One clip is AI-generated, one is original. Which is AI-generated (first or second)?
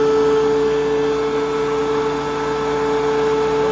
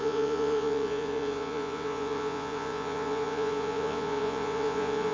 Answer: second